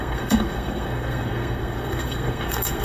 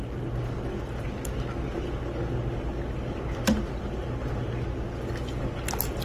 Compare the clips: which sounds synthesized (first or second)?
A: first